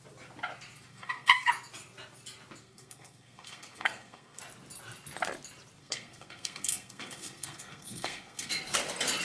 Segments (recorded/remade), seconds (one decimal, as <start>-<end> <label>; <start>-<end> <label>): 0.0-0.9 recorded; 0.9-1.5 remade; 1.5-2.6 recorded; 2.6-4.4 remade; 4.4-5.8 recorded; 5.8-8.5 remade; 8.5-9.2 recorded